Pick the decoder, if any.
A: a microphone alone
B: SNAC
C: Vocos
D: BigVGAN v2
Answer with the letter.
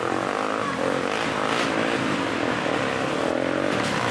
A